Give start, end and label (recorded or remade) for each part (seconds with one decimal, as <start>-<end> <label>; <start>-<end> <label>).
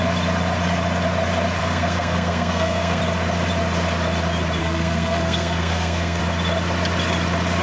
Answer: 0.0-1.6 recorded; 1.6-3.0 remade; 3.0-4.6 recorded; 4.6-6.2 remade; 6.2-7.6 recorded